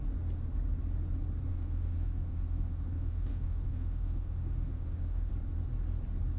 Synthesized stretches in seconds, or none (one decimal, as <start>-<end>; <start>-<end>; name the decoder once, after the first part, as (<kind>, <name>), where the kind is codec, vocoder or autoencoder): 1.5-5.3 (autoencoder, DAC-VAE)